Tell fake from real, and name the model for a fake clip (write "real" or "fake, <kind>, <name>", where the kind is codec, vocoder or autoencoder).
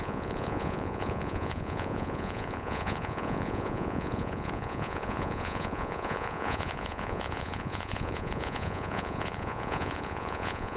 fake, vocoder, Vocos